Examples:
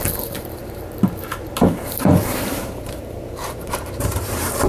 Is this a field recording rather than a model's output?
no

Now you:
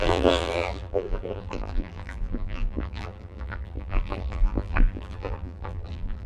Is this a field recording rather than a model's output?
no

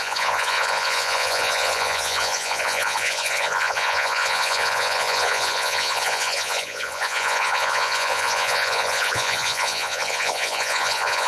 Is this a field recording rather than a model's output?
no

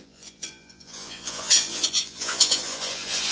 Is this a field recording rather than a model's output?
no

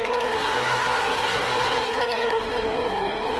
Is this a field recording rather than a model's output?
no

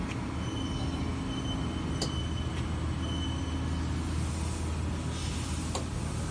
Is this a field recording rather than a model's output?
yes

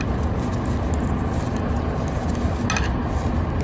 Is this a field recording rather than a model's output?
yes